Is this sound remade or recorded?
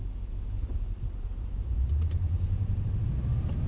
remade